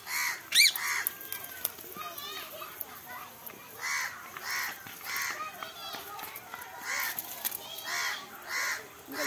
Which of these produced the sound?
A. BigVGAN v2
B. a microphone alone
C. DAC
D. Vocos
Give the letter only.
B